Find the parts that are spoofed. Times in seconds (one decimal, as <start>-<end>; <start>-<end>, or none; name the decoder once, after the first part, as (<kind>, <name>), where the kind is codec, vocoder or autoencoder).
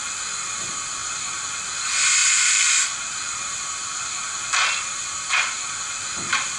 2.2-3.3 (vocoder, BigVGAN v2)